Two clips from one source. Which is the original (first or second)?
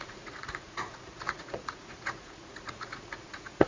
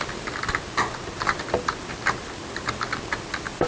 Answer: second